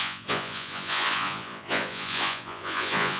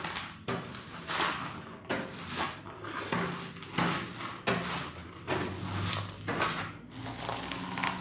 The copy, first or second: first